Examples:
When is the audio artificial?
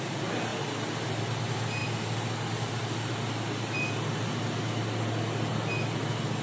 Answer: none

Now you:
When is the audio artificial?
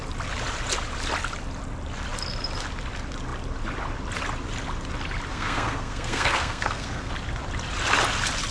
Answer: 5.3-7.1 (codec, SNAC)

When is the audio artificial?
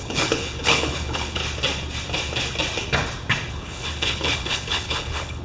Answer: 0.0-1.4 (codec, HILCodec); 3.5-5.4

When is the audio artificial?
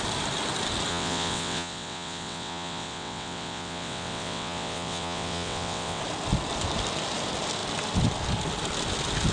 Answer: 0.9-6.0 (vocoder, WaveNeXt)